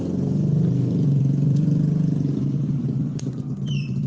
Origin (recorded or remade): remade